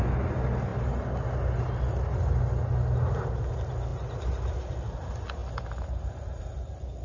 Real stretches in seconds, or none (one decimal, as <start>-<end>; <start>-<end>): 0.0-7.0